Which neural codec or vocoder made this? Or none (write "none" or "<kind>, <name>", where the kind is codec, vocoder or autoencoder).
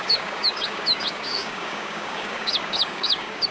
codec, DAC